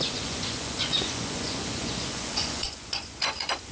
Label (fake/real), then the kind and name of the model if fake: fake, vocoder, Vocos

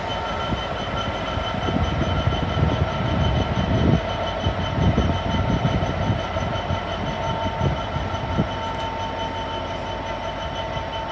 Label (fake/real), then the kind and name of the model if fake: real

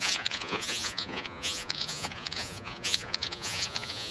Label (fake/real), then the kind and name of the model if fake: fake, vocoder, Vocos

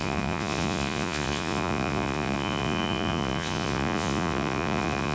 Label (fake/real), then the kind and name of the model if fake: fake, vocoder, Vocos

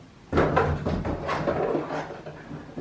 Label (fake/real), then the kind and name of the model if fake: real